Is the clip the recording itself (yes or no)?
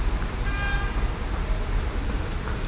no